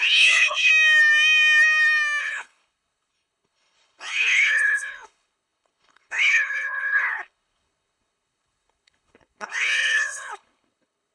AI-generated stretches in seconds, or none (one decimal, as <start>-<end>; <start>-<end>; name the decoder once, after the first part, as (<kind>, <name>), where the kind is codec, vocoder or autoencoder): 0.0-0.7 (codec, HILCodec); 2.2-11.1

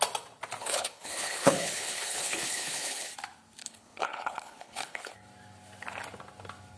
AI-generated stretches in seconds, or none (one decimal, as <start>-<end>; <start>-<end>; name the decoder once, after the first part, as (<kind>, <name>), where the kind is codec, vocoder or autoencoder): 0.6-3.1 (codec, HILCodec); 3.6-5.1